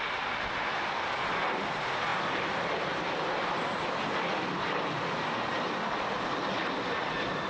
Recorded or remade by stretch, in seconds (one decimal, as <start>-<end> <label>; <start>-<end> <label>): 0.0-7.5 recorded